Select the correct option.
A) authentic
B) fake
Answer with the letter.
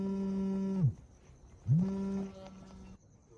A